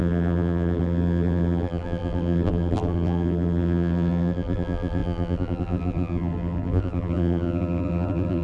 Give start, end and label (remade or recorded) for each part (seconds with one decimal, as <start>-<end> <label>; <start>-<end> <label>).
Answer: 0.0-8.4 remade